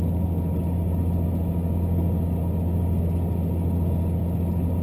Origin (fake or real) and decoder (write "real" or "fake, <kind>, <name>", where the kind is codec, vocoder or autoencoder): real